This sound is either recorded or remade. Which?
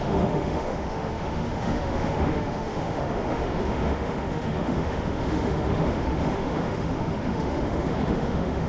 remade